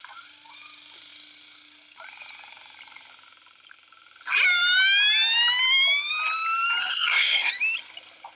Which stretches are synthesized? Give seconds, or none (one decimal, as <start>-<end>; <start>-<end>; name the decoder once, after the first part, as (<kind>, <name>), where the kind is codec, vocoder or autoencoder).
6.8-7.5 (codec, SNAC)